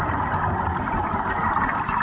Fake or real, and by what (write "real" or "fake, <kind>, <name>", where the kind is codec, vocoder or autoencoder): real